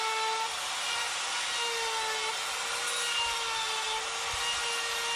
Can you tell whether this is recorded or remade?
recorded